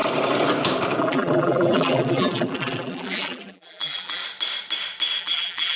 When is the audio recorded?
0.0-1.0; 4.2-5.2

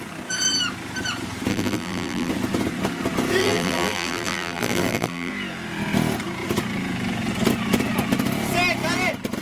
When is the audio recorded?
0.0-1.5; 2.3-3.4; 5.3-9.4

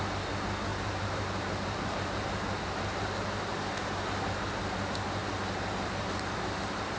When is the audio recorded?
0.0-0.7; 3.6-5.2; 6.6-7.0

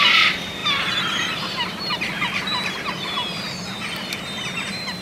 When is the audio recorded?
none

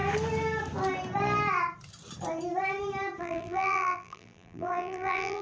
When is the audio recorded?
0.0-3.2

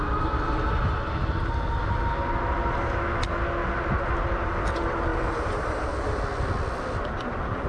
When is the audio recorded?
0.0-5.1; 6.2-7.7

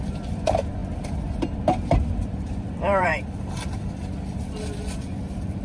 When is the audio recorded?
0.8-2.4